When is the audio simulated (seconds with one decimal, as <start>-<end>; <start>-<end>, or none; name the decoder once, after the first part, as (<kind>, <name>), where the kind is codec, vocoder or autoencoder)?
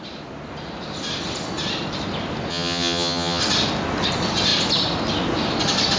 2.5-3.4 (vocoder, HiFi-GAN)